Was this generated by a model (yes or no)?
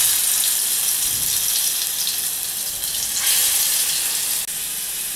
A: no